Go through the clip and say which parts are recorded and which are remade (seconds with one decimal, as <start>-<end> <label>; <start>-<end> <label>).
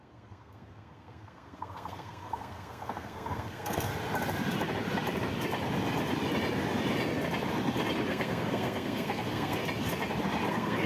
0.0-3.9 remade; 3.9-8.1 recorded; 8.1-9.6 remade; 9.6-10.5 recorded; 10.5-10.9 remade